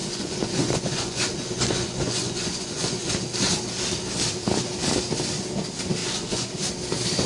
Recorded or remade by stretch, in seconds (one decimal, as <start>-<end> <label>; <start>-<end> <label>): 0.0-3.1 remade; 3.1-6.0 recorded; 6.0-6.5 remade; 6.5-7.3 recorded